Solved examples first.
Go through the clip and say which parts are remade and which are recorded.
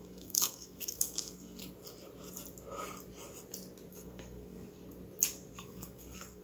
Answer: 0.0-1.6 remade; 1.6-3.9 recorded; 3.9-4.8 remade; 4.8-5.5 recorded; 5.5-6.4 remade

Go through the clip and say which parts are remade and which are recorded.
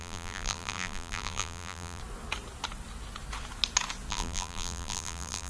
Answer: 0.0-2.0 remade; 2.0-4.1 recorded; 4.1-5.5 remade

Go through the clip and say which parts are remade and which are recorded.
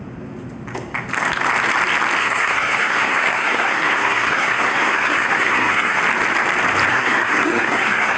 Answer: 0.0-2.2 recorded; 2.2-6.0 remade; 6.0-6.9 recorded; 6.9-8.2 remade